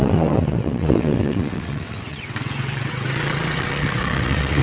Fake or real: fake